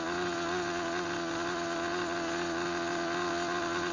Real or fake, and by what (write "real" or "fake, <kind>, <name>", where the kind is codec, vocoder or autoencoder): real